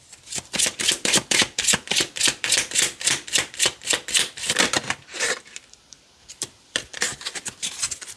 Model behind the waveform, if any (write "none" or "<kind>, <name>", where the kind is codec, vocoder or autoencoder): vocoder, BigVGAN v2